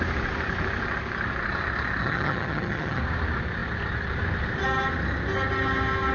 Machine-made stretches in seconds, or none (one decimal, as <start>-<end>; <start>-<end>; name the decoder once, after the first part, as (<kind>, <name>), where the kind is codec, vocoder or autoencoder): 2.0-3.0 (vocoder, HiFi-GAN)